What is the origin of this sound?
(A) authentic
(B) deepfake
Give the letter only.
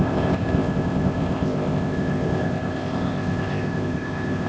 B